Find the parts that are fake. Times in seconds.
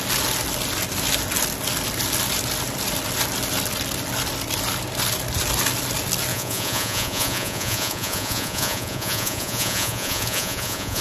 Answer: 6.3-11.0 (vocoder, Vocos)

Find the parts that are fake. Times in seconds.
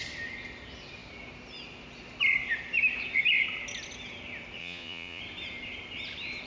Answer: 4.6-5.2 (vocoder, Vocos)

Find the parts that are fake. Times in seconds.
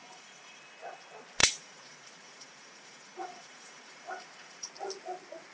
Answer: 0.0-0.6 (vocoder, Vocos); 1.4-4.7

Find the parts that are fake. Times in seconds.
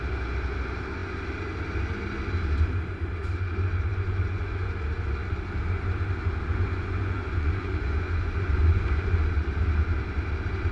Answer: 3.9-4.7 (vocoder, Vocos); 6.5-9.3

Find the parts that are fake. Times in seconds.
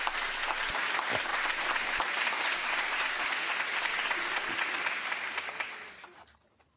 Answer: none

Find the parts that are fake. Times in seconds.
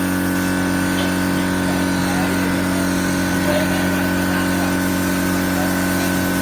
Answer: none